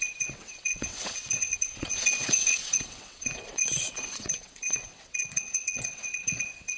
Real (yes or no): no